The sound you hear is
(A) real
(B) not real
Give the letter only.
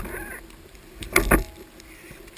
A